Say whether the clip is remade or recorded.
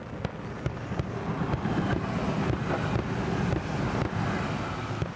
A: recorded